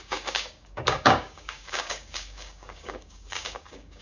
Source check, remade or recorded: remade